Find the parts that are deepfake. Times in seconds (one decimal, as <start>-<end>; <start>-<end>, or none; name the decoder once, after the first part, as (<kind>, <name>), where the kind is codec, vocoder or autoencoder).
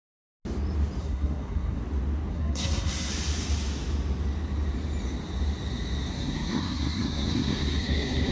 1.0-1.8 (codec, SNAC); 2.3-3.1; 6.1-8.3